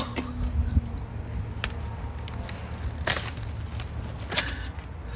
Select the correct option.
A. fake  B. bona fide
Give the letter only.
B